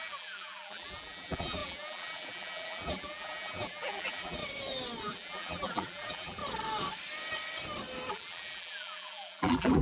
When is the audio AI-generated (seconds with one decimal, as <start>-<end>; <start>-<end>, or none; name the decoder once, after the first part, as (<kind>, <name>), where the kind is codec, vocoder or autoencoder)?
0.0-4.4 (vocoder, BigVGAN v2); 5.0-6.4; 8.1-9.8